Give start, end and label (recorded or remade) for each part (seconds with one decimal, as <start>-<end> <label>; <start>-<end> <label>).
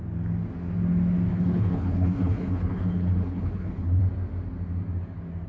0.0-1.3 recorded; 1.3-4.0 remade; 4.0-5.5 recorded